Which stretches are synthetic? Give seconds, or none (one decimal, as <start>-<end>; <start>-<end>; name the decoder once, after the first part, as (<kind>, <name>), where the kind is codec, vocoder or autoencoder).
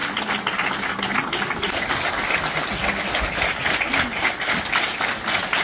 none